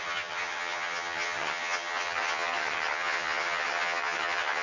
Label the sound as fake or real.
fake